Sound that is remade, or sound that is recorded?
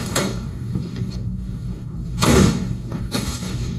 remade